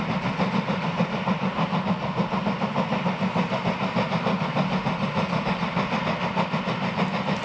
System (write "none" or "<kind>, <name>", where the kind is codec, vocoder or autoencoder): none